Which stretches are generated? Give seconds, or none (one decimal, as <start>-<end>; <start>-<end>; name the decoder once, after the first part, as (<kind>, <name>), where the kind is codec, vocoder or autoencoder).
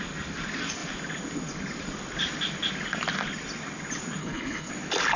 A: 4.2-4.7 (codec, HILCodec)